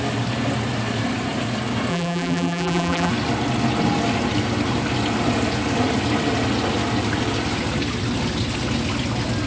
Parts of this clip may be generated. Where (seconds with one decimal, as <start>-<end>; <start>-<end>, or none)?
1.9-3.1

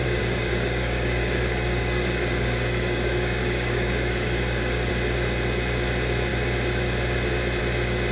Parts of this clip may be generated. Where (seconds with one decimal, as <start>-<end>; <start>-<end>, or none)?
0.0-4.9

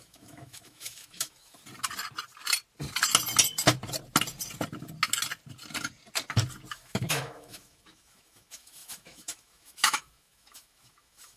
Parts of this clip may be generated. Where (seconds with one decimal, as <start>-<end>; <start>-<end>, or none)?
0.0-1.6; 6.7-11.4

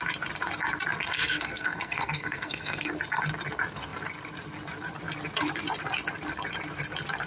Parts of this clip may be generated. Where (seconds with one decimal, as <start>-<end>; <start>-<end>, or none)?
1.1-2.9

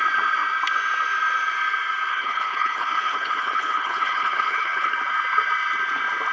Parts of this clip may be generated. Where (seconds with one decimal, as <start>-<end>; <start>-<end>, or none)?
2.1-4.9

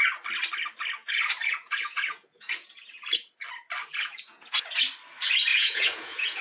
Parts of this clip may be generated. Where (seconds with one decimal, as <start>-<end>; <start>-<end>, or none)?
1.0-3.3; 3.8-4.6; 5.5-6.4

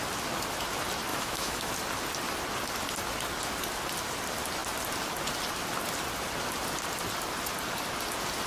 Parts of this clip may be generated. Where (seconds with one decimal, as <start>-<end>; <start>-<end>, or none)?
1.1-1.7